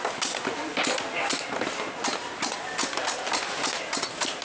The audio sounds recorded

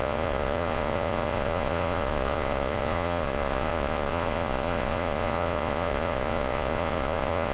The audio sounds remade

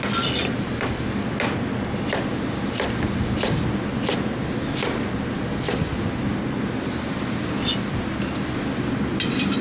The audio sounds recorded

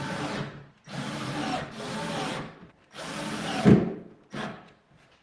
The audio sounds recorded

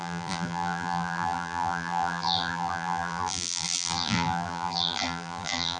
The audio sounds remade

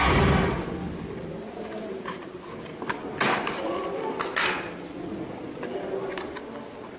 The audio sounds recorded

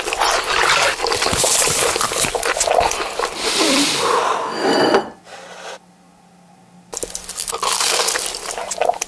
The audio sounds recorded